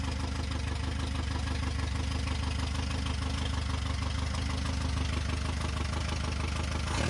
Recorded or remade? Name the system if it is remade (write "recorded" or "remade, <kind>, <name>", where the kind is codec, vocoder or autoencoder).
recorded